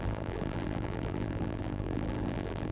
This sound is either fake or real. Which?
fake